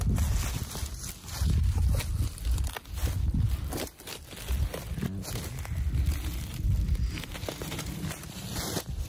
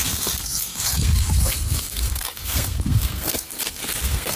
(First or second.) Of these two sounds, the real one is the first